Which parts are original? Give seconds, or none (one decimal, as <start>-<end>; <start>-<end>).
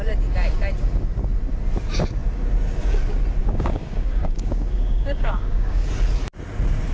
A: 0.0-3.4; 5.9-6.9